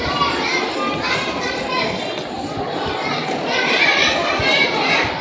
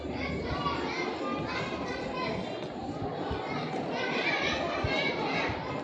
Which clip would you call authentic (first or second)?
second